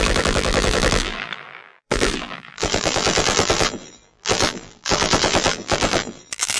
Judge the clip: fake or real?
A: fake